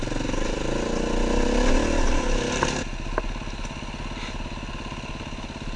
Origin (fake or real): real